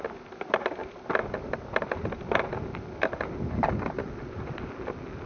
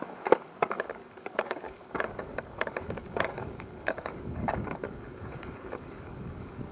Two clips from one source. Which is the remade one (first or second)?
second